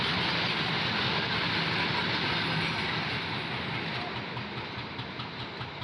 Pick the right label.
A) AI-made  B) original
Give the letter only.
B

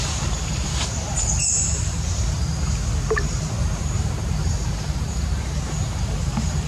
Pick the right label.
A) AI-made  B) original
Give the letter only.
A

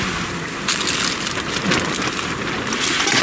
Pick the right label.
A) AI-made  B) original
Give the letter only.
B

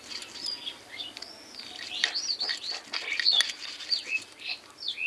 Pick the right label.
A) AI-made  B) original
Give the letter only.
B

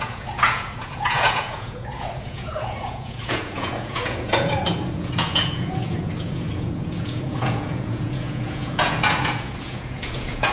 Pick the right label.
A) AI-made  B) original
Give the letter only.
A